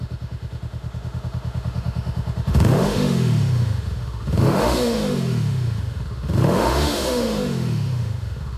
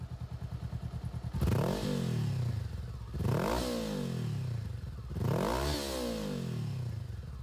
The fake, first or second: first